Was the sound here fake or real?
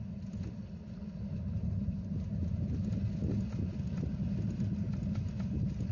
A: real